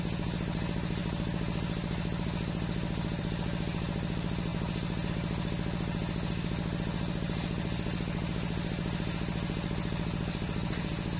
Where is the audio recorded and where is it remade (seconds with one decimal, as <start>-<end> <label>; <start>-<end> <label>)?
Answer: 0.0-11.2 recorded